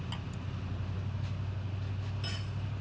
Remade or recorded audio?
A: recorded